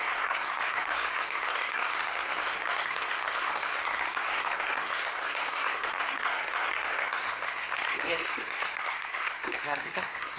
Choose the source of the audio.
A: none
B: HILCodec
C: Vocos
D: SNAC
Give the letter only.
D